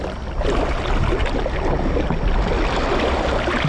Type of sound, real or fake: real